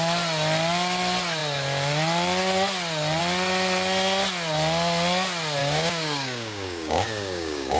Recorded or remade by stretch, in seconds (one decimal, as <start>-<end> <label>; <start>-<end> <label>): 0.0-5.6 recorded; 5.6-7.8 remade